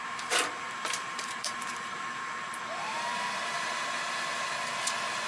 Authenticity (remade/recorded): remade